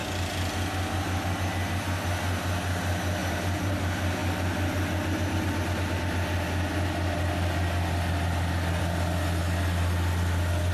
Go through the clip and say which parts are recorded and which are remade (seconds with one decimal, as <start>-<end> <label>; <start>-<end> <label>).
0.0-3.2 recorded; 3.2-3.8 remade; 3.8-10.7 recorded